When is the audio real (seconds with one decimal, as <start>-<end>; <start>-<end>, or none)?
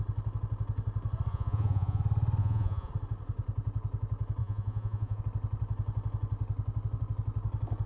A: 0.0-1.3; 2.0-2.4; 2.9-4.4; 5.2-7.9